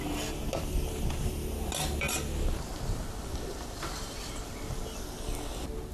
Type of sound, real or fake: real